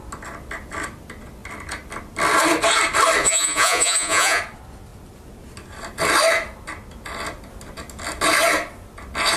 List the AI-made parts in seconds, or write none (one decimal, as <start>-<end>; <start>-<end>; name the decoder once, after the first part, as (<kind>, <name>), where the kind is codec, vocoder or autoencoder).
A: 3.2-4.4 (vocoder, Vocos)